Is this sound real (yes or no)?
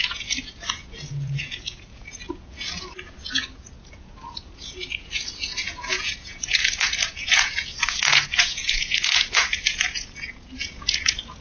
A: no